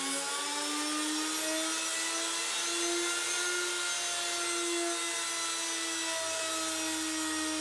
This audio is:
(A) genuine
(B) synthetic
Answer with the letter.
A